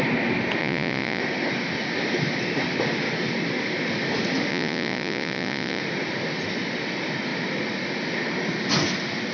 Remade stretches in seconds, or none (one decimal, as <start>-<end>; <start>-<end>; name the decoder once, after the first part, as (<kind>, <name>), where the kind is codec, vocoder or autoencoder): 0.6-1.2 (vocoder, Vocos); 4.5-5.8

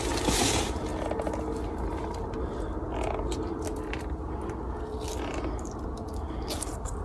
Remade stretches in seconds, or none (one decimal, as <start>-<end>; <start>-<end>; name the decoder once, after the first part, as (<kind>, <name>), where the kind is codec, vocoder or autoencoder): none

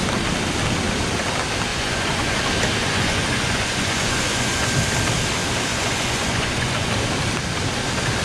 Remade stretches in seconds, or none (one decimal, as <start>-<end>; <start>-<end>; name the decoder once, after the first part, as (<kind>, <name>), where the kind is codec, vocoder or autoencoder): 1.7-2.4 (vocoder, Vocos); 2.8-4.7; 5.7-6.9

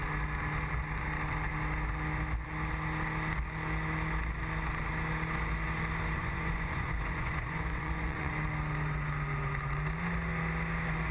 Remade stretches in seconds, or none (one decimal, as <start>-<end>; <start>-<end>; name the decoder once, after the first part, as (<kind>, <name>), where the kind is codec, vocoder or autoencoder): 6.2-8.3 (vocoder, Vocos)

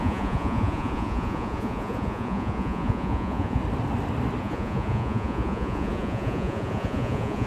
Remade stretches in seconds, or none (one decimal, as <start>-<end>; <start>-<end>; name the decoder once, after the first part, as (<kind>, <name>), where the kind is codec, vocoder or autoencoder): 0.0-3.6 (vocoder, Vocos); 4.4-7.5